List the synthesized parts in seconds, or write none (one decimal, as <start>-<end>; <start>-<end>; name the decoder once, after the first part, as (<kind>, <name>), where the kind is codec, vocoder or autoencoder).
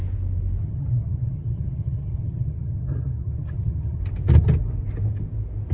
0.6-4.0 (vocoder, HiFi-GAN)